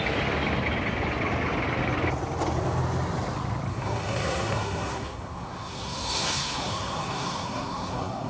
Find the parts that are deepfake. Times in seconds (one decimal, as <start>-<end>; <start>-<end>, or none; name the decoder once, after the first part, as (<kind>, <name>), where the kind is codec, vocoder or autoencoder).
3.7-8.3 (codec, SNAC)